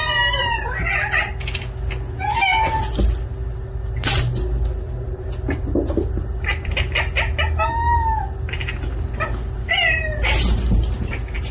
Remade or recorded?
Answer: recorded